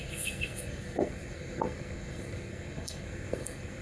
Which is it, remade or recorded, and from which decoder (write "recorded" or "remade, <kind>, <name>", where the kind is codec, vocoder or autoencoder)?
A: remade, codec, SNAC